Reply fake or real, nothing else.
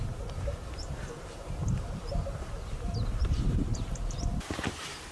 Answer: fake